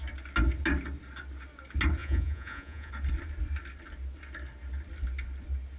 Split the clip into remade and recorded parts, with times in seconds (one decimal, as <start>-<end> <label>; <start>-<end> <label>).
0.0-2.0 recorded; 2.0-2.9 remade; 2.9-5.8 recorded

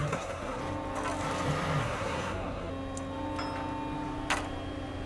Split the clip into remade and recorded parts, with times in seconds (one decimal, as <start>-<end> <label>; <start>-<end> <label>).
0.0-0.6 remade; 0.6-1.8 recorded; 1.8-2.7 remade; 2.7-5.1 recorded

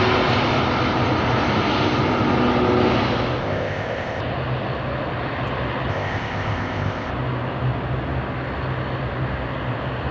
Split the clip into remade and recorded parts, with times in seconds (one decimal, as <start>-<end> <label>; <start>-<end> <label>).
0.0-3.4 recorded; 3.4-4.2 remade; 4.2-5.9 recorded; 5.9-7.1 remade; 7.1-10.1 recorded

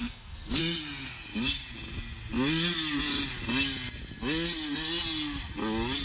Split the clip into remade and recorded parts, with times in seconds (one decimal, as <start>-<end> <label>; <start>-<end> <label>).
0.0-0.6 remade; 0.6-6.0 recorded

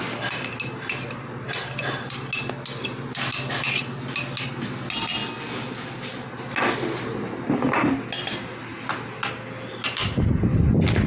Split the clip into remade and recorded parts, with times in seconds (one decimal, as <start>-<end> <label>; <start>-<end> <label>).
0.0-11.1 recorded

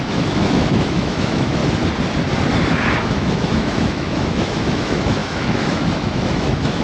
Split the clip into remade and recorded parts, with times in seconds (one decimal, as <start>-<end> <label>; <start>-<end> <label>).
0.0-1.6 remade; 1.6-2.9 recorded; 2.9-6.8 remade

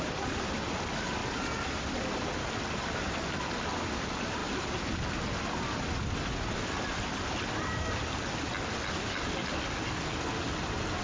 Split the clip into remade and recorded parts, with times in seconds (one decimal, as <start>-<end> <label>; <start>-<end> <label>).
0.0-11.0 recorded